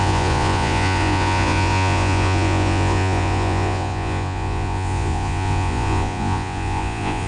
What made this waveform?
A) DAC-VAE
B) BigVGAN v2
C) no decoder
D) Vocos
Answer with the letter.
D